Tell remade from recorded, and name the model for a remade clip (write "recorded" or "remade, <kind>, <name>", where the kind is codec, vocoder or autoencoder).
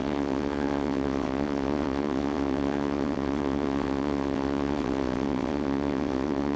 remade, vocoder, WaveNeXt